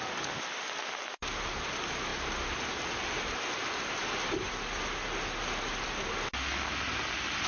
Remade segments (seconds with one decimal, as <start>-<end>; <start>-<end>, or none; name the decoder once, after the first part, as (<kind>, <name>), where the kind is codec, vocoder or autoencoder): none